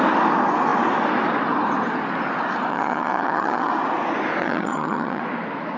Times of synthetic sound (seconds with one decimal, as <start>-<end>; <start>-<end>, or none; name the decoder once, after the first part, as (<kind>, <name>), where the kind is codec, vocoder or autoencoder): 2.7-3.7 (vocoder, HiFi-GAN); 4.4-5.2